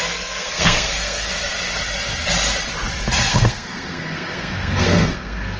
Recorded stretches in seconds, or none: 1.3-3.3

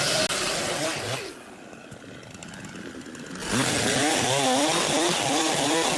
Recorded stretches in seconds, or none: 0.0-6.0

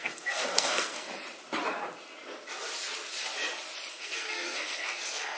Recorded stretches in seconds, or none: 1.1-3.9

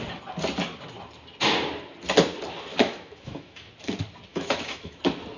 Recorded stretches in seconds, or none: 0.0-2.7; 3.7-4.3; 5.0-5.4

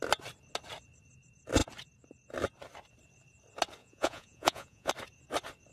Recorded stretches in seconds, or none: 0.0-3.8; 4.9-5.7

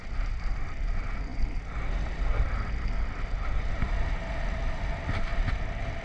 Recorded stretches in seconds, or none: 0.0-6.0